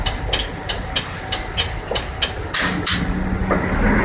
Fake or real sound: real